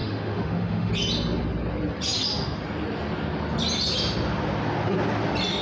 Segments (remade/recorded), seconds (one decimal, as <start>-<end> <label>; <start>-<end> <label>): 0.0-0.9 remade; 0.9-5.6 recorded